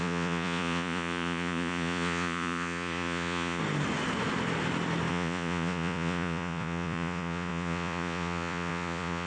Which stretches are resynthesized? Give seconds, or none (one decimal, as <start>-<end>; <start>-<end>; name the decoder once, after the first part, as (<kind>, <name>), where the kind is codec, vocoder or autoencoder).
0.0-3.6 (vocoder, Vocos); 5.1-9.3